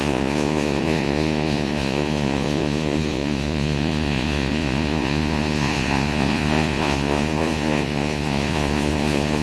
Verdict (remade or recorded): remade